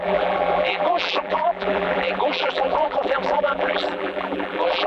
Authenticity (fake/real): fake